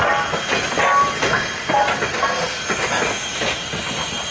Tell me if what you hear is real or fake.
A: real